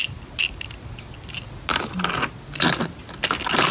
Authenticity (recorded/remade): recorded